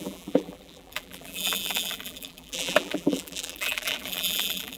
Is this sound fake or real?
fake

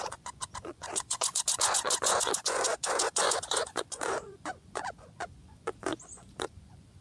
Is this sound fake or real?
fake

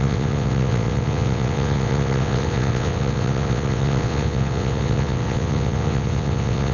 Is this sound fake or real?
fake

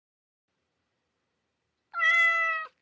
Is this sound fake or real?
fake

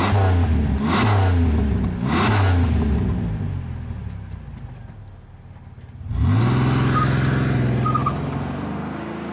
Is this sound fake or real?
real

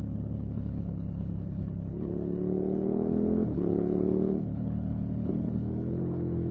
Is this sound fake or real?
fake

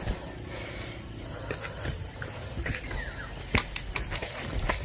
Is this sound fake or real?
real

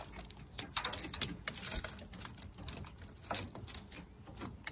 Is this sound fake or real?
real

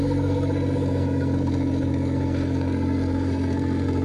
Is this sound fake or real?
fake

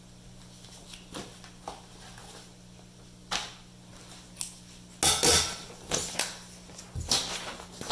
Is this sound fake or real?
real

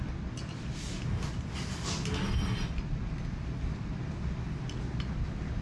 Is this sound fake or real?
real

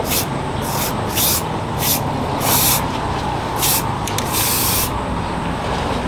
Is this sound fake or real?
real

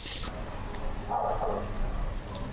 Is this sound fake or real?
real